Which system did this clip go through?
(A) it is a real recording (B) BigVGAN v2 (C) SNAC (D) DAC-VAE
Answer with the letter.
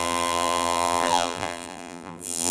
B